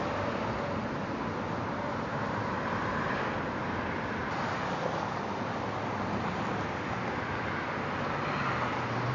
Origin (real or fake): real